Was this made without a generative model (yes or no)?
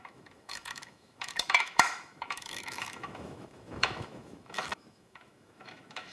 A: no